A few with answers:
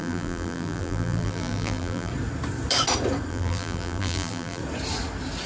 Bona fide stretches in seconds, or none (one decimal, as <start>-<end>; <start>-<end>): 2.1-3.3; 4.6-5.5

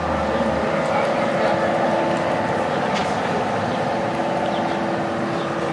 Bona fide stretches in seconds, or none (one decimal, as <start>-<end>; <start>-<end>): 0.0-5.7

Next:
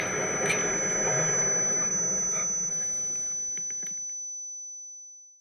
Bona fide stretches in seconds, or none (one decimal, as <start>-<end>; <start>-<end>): 0.0-5.4

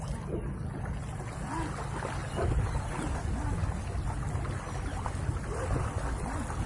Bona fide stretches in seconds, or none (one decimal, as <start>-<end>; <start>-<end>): 0.0-6.7

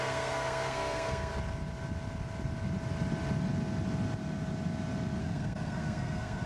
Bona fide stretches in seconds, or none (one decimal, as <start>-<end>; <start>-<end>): 1.3-5.2

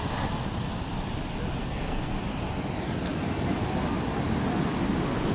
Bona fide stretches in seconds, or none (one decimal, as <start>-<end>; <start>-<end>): 0.0-1.6; 2.1-5.3

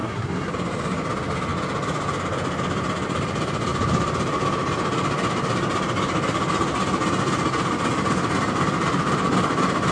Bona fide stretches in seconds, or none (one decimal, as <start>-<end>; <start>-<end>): 0.5-9.9